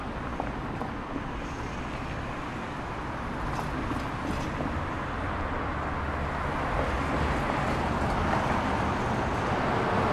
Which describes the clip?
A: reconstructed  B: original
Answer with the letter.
B